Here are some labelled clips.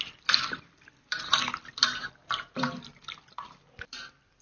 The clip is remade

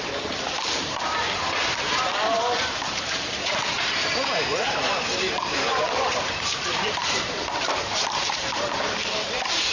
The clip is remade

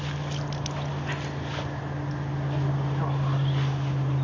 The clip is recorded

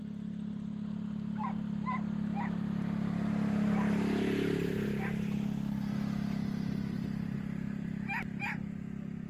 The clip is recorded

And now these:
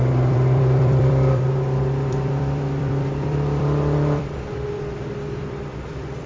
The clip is remade